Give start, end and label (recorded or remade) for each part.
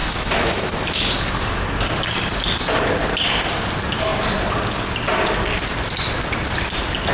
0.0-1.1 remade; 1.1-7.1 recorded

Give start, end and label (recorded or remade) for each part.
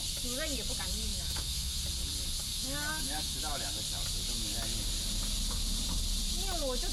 0.0-1.1 recorded; 1.1-1.8 remade; 1.8-2.5 recorded; 2.5-3.4 remade; 3.4-6.9 recorded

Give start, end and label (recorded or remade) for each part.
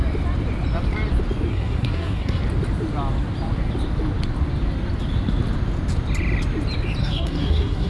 0.0-1.5 recorded; 1.5-2.4 remade; 2.4-7.0 recorded; 7.0-7.9 remade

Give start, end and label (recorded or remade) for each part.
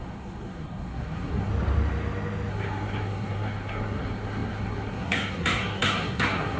0.0-1.5 remade; 1.5-2.5 recorded; 2.5-6.6 remade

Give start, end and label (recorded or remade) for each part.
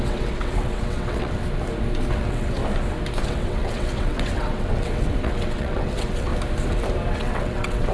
0.0-1.4 remade; 1.4-2.1 recorded; 2.1-2.6 remade; 2.6-3.2 recorded; 3.2-6.3 remade; 6.3-7.1 recorded; 7.1-7.9 remade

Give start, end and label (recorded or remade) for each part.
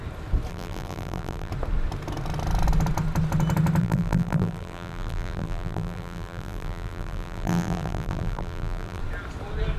0.0-0.5 recorded; 0.5-1.5 remade; 1.5-3.8 recorded; 3.8-9.0 remade; 9.0-9.8 recorded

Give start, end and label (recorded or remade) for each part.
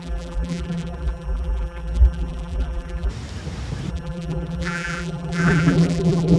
0.0-3.1 remade; 3.1-3.9 recorded; 3.9-6.4 remade